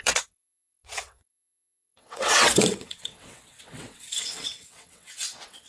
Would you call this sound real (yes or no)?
no